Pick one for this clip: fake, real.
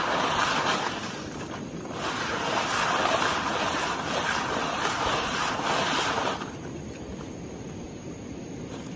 real